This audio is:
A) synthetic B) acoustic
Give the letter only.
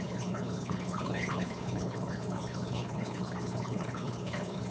A